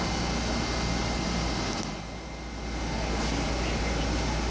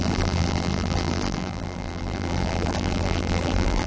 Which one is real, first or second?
first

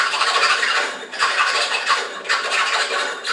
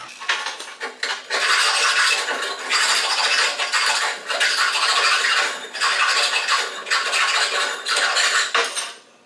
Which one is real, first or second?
second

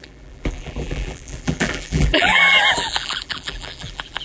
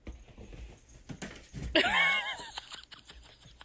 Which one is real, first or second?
second